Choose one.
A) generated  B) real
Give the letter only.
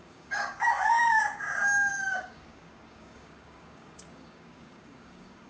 A